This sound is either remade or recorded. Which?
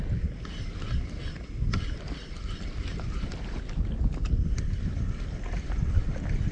recorded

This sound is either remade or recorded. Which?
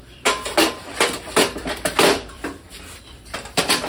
remade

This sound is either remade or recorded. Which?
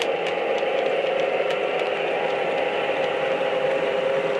remade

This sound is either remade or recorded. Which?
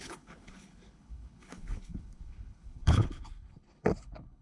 remade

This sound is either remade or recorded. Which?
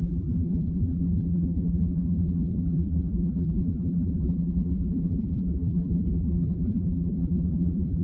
remade